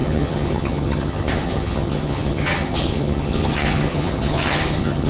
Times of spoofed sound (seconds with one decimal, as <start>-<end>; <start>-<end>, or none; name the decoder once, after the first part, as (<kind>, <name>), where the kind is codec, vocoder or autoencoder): 0.0-5.1 (vocoder, HiFi-GAN)